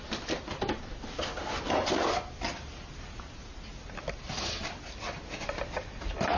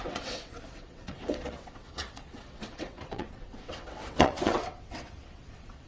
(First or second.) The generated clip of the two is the second